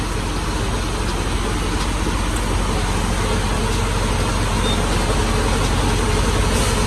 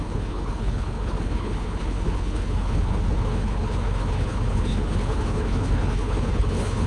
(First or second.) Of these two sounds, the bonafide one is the first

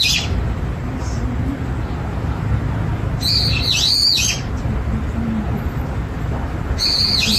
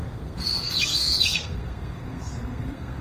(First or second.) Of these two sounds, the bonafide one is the first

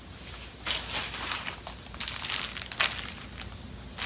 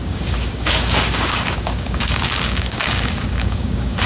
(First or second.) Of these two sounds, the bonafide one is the first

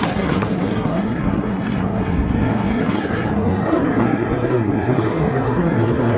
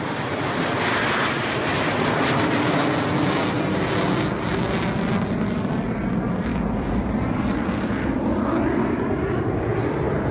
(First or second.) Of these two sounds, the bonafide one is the second